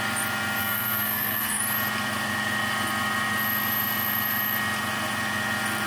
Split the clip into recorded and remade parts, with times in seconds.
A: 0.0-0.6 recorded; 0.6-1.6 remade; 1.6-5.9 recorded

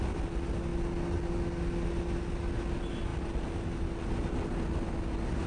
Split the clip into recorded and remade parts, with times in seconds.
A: 0.0-5.5 recorded

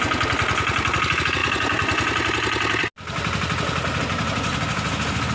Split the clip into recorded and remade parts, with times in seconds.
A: 0.0-5.3 recorded